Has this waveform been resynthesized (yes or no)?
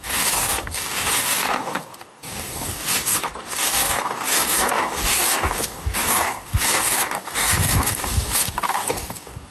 yes